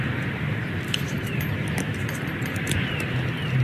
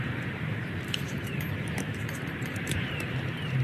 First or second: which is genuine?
first